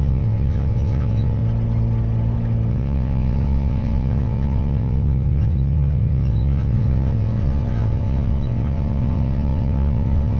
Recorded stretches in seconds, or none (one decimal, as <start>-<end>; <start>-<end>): 1.4-2.7